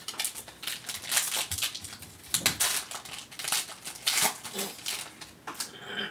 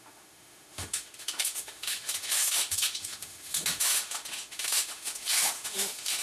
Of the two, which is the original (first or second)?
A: first